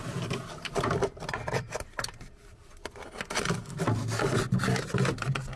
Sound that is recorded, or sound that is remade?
recorded